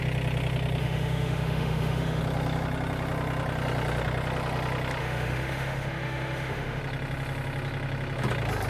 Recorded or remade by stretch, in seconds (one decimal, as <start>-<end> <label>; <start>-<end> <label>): 0.0-0.8 recorded; 0.8-2.2 remade; 2.2-5.0 recorded; 5.0-6.8 remade; 6.8-8.7 recorded